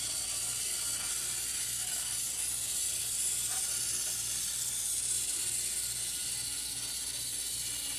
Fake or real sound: real